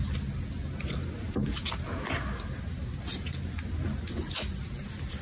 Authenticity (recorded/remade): recorded